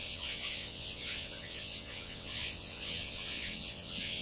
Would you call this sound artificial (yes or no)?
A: yes